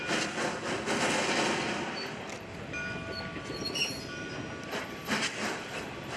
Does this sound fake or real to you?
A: real